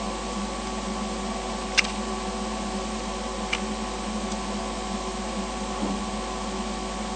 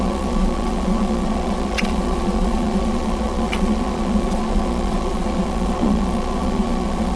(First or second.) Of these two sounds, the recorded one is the first